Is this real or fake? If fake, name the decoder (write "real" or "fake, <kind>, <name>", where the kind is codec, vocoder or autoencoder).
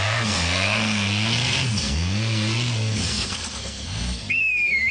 fake, codec, SNAC